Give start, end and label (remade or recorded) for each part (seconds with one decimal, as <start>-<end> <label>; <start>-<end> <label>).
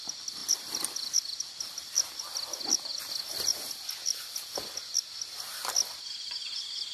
0.0-0.4 recorded; 0.4-2.1 remade; 2.1-6.9 recorded